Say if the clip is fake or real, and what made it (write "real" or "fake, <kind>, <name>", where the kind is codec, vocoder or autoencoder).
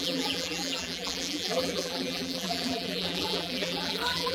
fake, vocoder, BigVGAN v2